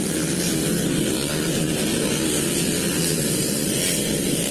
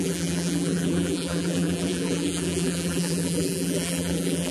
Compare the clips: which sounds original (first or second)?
first